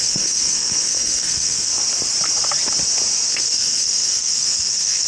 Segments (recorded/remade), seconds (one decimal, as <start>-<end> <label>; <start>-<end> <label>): 0.0-1.7 remade; 1.7-3.3 recorded; 3.3-5.1 remade